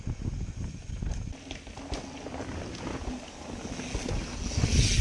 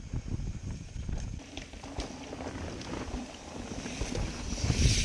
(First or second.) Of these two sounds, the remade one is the second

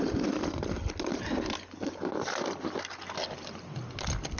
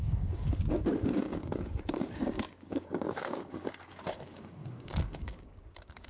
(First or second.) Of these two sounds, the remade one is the second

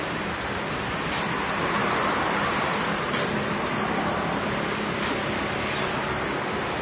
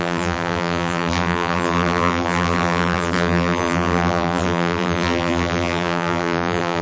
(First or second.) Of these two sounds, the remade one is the second